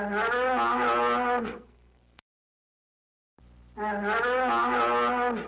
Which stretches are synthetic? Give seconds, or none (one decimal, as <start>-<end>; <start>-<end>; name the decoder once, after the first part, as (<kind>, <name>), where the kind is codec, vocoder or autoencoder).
1.4-2.6 (codec, SNAC)

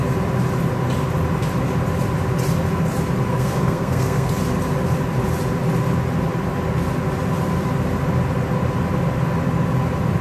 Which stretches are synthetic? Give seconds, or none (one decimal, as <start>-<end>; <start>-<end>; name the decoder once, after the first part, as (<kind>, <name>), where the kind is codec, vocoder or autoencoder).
3.3-4.3 (codec, SNAC)

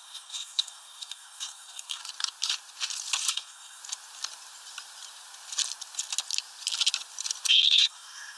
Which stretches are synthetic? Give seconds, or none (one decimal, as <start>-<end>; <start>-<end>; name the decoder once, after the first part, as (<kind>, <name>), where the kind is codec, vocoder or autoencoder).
0.0-2.0 (codec, SNAC); 3.3-3.8; 7.5-8.4

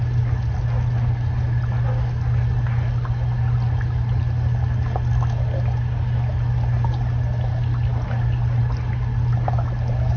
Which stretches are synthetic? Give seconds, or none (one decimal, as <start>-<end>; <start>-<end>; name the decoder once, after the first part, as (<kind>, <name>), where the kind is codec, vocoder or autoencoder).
none

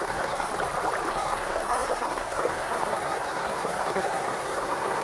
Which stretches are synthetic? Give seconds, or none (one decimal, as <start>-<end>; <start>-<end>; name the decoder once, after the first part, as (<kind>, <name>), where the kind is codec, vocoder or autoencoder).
0.0-0.5 (codec, SNAC); 1.1-5.0